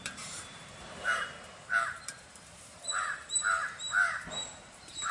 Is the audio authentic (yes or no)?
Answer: no